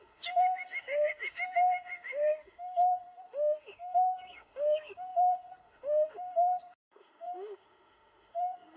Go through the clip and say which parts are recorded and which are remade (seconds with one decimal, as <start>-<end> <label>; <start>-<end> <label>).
0.0-8.8 remade